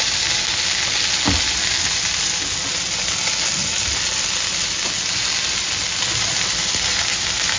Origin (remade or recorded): recorded